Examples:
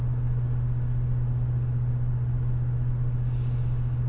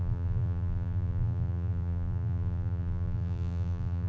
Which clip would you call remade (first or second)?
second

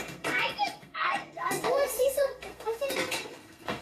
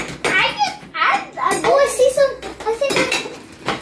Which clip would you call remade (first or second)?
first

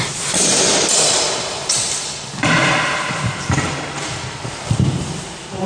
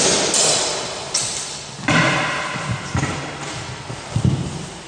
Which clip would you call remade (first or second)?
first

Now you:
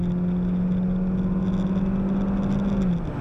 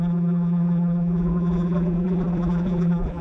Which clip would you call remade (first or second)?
second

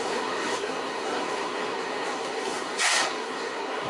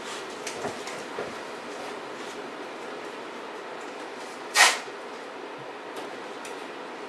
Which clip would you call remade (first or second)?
first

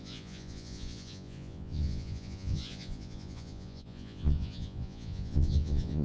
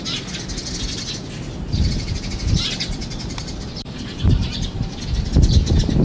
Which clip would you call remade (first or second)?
first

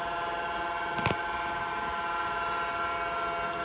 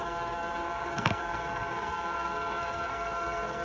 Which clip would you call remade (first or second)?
second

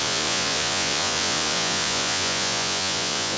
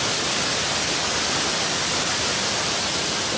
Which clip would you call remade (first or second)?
first